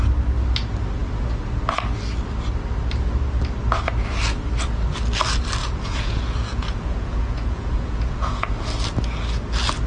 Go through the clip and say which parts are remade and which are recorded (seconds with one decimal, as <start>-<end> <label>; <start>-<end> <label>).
0.0-5.6 recorded; 5.6-8.5 remade; 8.5-9.9 recorded